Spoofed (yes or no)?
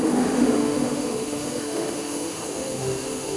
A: yes